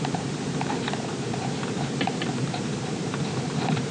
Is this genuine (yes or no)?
no